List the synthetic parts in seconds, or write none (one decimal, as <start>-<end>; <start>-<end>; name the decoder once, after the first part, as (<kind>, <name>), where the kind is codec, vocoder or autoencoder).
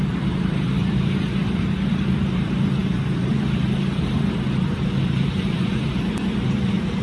0.0-7.0 (vocoder, BigVGAN v2)